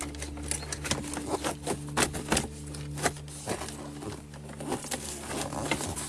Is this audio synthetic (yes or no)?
no